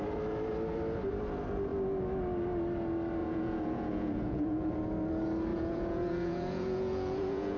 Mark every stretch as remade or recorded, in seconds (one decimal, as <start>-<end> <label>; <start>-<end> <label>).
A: 0.0-3.2 recorded; 3.2-4.7 remade; 4.7-5.5 recorded; 5.5-7.6 remade